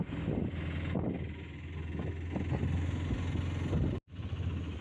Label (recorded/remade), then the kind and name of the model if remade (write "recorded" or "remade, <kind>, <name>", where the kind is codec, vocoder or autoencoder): recorded